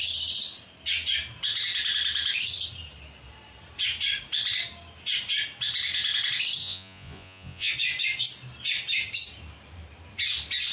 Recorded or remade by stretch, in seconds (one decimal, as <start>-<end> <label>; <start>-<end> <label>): 0.0-6.6 recorded; 6.6-7.7 remade; 7.7-10.7 recorded